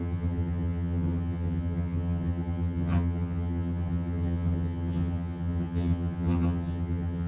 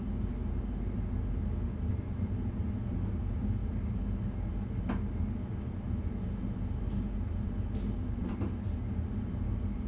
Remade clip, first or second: first